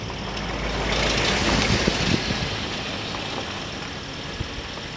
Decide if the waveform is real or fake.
real